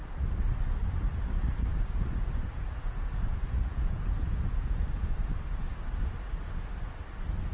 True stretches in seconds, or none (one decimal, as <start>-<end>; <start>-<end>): 0.0-1.7; 5.1-7.5